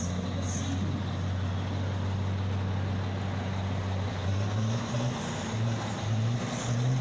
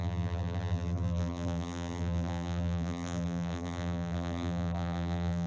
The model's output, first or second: second